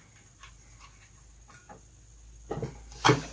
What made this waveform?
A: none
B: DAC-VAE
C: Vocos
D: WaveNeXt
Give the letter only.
A